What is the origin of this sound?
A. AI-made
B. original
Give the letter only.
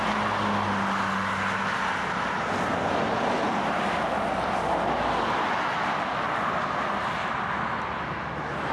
B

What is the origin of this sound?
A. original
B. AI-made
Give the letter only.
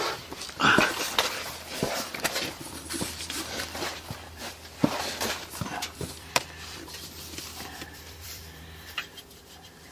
B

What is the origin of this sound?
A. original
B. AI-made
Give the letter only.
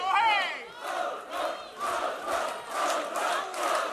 A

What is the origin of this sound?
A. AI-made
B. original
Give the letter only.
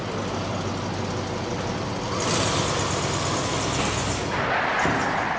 B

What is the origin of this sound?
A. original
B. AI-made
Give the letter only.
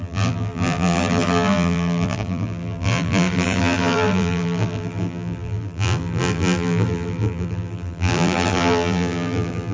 B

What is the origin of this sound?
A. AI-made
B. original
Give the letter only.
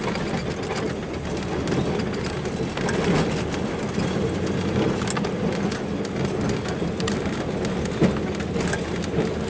B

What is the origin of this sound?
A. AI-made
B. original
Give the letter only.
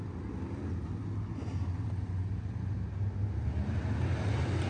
B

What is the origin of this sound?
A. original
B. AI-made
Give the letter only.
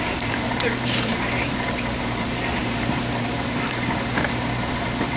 B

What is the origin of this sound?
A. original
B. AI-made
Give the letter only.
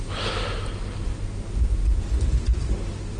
A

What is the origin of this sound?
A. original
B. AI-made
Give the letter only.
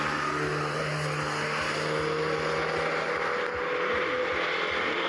A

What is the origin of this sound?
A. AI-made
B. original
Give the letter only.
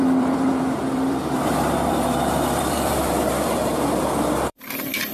A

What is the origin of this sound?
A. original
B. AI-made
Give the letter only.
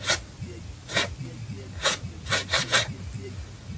A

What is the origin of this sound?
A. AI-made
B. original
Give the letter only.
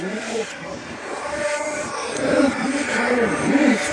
A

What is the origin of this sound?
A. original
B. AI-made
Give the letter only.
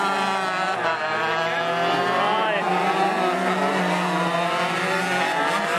A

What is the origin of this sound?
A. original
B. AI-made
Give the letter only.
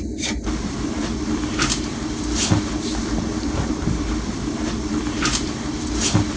B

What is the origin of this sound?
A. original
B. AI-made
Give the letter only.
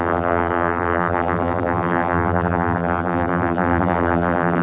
B